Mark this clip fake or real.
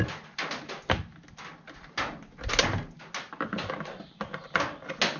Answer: real